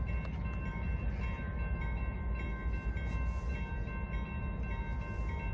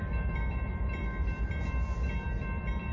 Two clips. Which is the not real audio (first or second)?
second